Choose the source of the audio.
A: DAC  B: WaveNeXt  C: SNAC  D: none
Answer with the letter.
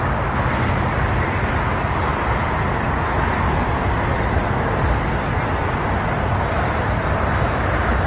D